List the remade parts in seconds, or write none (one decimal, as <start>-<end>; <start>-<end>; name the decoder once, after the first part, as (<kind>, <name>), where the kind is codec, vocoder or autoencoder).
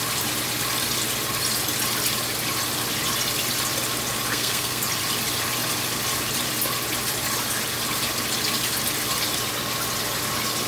4.3-4.8 (codec, SNAC)